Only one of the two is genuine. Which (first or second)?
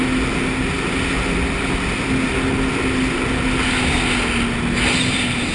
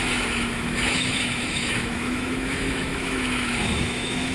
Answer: first